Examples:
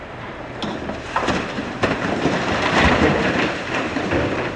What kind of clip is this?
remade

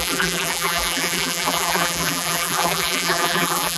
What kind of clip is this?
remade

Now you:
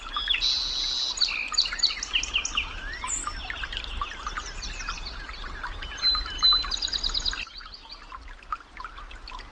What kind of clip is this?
recorded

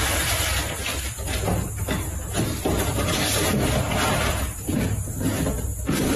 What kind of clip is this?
remade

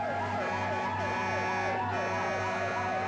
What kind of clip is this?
recorded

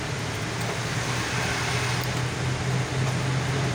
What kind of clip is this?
recorded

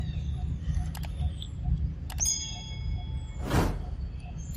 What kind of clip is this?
recorded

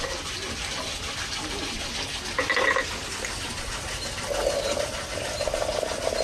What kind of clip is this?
recorded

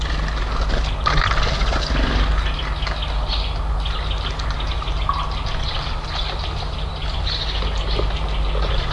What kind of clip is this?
recorded